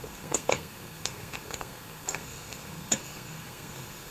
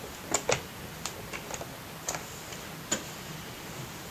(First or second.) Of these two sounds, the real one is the second